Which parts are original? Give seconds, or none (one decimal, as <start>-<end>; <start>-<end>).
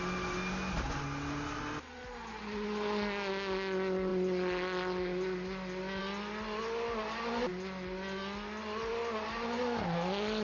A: 0.0-10.4